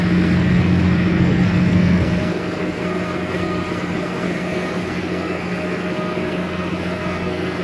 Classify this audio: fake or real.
fake